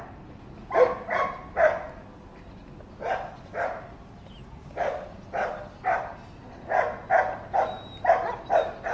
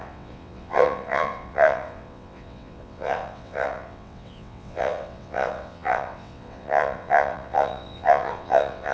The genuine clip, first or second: first